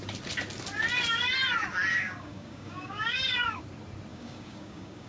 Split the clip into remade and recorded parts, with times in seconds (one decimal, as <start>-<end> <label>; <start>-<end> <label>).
0.0-1.9 recorded; 1.9-3.6 remade; 3.6-4.1 recorded; 4.1-5.1 remade